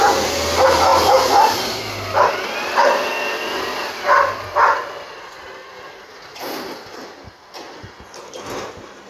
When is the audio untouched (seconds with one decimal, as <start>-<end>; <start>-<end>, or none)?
0.9-2.3